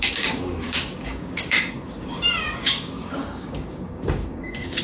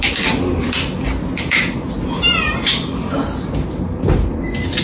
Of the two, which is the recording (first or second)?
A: second